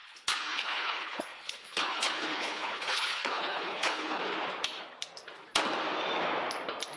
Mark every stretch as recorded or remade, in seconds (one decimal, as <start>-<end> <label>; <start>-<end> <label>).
0.0-4.2 remade; 4.2-7.0 recorded